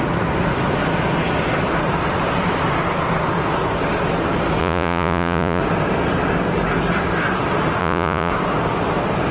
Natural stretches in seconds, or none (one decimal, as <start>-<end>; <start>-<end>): 0.0-4.6; 5.6-7.8; 8.3-9.3